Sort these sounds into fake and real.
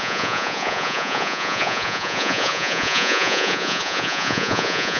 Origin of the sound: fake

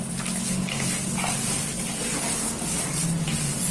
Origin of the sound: real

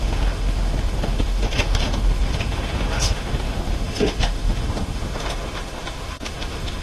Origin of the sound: fake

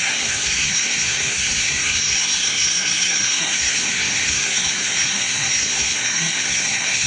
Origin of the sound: fake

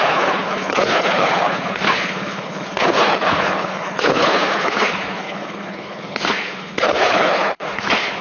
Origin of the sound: fake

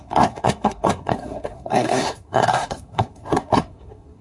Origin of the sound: fake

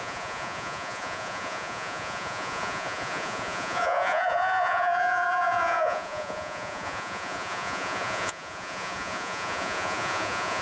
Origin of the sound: fake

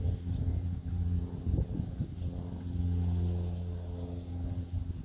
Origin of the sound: real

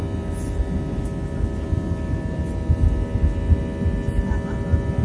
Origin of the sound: real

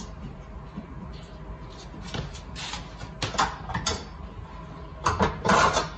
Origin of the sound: real